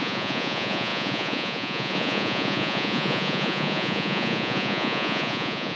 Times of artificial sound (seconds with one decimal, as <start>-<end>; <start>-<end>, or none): 0.0-5.8